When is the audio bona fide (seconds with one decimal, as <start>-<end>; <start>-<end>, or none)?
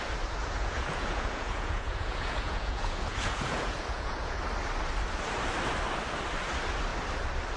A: 0.0-0.4; 4.4-7.6